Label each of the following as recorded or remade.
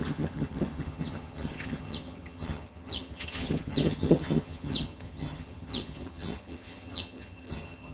remade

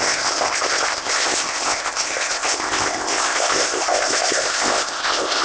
remade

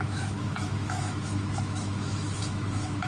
remade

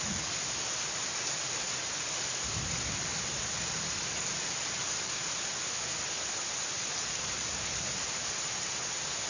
recorded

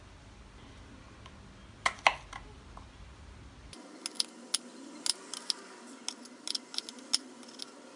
recorded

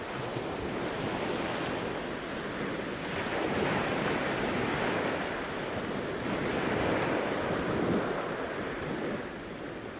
recorded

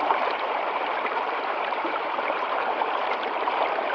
remade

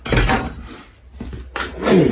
recorded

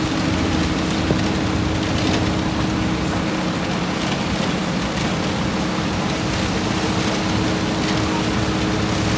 recorded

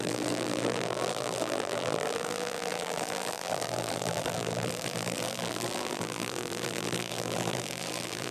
remade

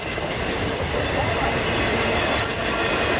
recorded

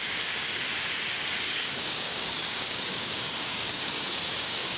remade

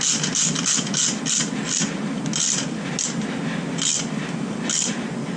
recorded